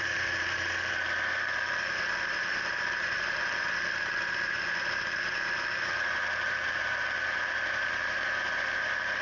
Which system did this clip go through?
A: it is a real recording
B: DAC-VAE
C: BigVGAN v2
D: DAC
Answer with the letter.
C